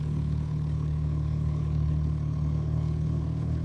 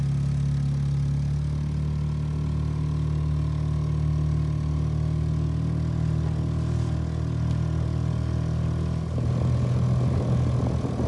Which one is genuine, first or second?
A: second